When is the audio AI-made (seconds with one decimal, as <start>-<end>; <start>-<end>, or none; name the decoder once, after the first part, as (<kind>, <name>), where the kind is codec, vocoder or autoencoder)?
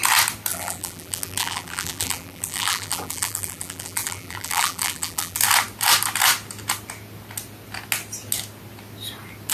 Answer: 0.5-5.4 (vocoder, BigVGAN v2)